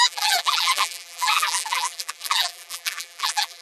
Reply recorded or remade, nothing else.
remade